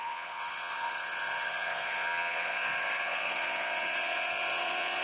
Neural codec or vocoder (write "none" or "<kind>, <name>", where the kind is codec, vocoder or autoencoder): vocoder, Vocos